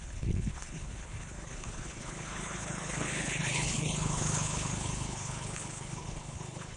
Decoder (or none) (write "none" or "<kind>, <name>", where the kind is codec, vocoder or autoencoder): codec, HILCodec